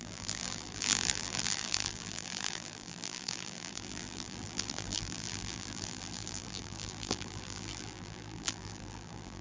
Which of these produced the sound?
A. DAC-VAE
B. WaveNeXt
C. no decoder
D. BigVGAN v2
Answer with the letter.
D